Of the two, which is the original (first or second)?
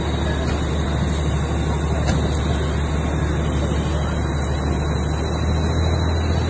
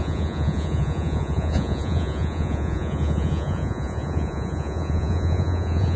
first